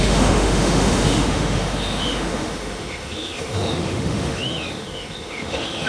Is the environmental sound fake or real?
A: fake